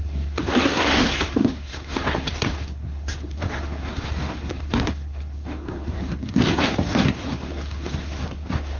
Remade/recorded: remade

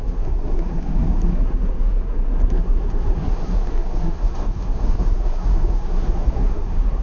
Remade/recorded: remade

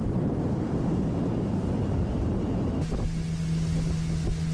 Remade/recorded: recorded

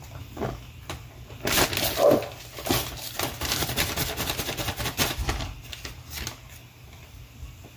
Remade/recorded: recorded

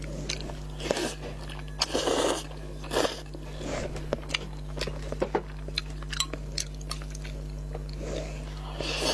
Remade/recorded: recorded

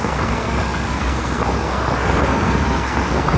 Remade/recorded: remade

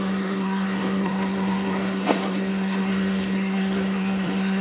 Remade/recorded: remade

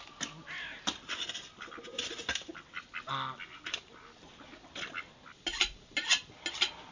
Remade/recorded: recorded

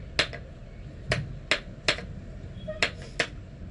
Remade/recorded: recorded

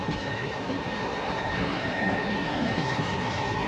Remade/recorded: remade